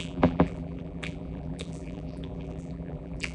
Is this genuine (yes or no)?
no